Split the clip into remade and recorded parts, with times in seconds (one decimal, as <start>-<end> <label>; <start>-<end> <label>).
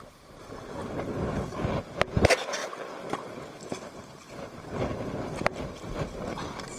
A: 0.0-6.8 recorded